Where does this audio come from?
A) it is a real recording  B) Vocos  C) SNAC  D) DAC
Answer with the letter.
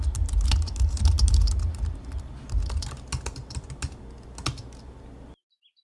A